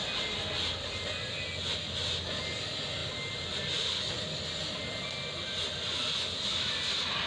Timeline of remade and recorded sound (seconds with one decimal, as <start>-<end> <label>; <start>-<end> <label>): 0.0-7.3 recorded